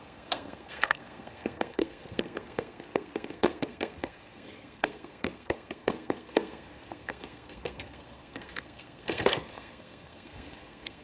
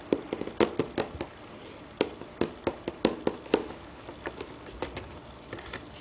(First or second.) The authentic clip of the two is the second